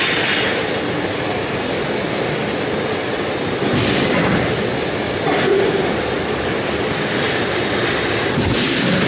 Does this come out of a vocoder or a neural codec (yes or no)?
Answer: no